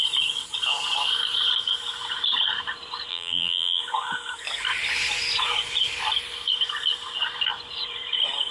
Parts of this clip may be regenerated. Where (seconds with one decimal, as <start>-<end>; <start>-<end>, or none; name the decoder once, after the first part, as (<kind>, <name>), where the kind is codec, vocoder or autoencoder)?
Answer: 3.1-3.8 (vocoder, BigVGAN v2)